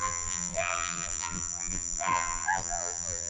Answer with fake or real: fake